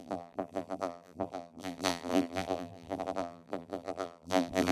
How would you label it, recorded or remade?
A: remade